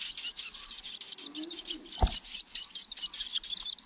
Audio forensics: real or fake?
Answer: real